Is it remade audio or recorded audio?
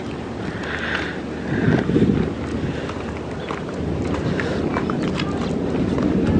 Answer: recorded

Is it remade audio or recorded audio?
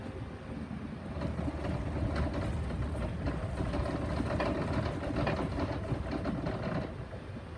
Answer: recorded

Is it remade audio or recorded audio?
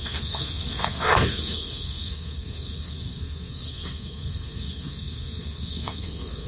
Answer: remade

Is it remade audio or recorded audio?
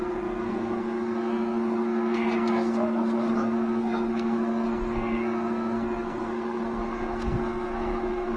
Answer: remade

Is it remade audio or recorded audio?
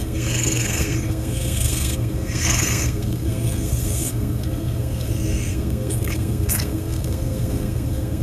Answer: remade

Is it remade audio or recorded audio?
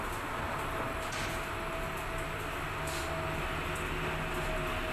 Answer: recorded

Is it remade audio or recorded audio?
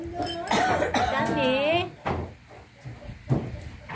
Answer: recorded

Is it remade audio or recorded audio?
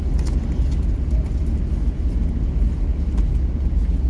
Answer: recorded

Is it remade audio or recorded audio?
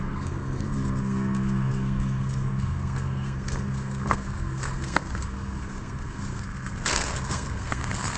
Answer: remade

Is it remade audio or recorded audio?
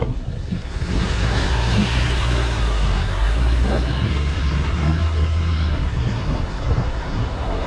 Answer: remade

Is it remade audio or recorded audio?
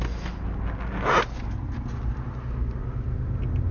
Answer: recorded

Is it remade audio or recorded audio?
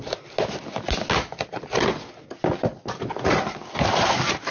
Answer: recorded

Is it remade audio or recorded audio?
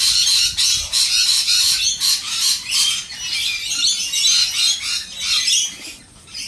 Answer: recorded